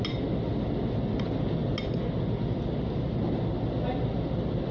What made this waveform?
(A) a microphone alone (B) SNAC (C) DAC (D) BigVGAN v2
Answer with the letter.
A